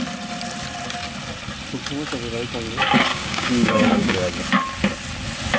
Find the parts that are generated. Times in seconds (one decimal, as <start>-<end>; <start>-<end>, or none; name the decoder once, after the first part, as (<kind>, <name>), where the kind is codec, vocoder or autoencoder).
3.1-4.4 (codec, DAC)